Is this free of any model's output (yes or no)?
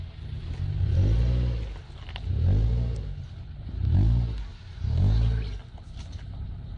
yes